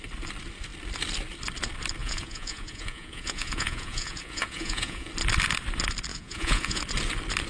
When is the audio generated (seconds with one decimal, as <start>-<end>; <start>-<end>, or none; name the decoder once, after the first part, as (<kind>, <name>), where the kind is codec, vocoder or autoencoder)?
2.0-5.1 (vocoder, Vocos); 6.1-6.8